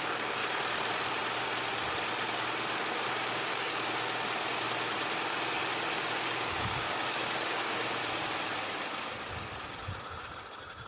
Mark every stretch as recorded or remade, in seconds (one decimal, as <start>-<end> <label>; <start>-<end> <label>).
0.0-0.4 remade; 0.4-2.8 recorded; 2.8-3.7 remade; 3.7-6.0 recorded; 6.0-8.0 remade; 8.0-10.9 recorded